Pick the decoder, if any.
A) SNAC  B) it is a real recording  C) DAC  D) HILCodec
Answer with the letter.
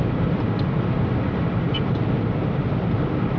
B